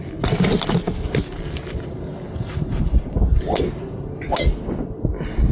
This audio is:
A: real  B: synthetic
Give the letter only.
A